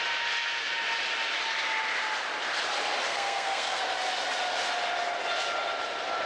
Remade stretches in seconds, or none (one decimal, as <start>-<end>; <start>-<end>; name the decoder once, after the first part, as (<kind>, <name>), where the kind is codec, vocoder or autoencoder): 3.1-3.8 (codec, SNAC)